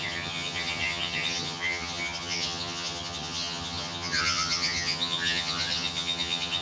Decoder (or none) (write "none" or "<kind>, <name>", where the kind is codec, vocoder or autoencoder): vocoder, HiFi-GAN